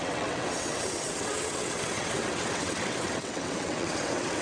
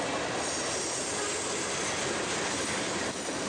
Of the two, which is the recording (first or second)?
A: second